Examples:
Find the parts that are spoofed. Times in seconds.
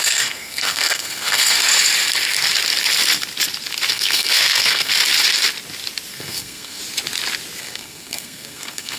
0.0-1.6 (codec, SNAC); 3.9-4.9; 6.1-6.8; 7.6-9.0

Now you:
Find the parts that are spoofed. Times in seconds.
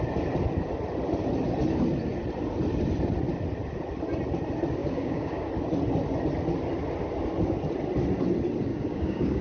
4.8-5.5 (codec, DAC); 8.7-9.4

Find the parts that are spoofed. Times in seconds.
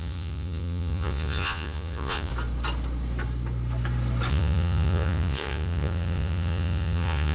0.0-2.3 (vocoder, Vocos); 4.3-7.3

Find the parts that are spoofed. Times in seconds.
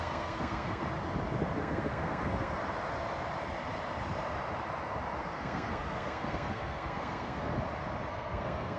0.0-0.8 (codec, SNAC); 1.6-2.6; 5.2-7.5; 8.1-8.8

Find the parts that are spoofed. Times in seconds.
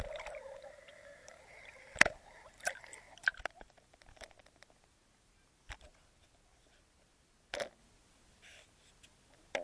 none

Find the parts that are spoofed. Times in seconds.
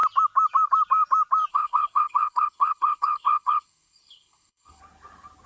1.5-4.8 (codec, HILCodec)